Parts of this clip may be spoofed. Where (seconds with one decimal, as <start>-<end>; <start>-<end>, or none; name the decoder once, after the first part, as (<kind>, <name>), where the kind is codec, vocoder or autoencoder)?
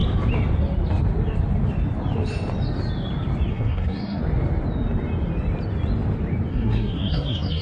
3.5-4.2 (codec, SNAC); 6.5-7.6